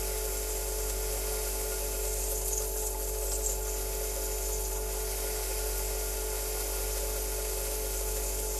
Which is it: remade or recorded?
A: recorded